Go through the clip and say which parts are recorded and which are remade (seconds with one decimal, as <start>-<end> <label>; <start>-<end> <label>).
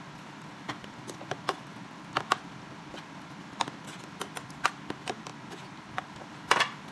0.0-1.7 remade; 1.7-3.0 recorded; 3.0-5.3 remade; 5.3-5.9 recorded; 5.9-6.9 remade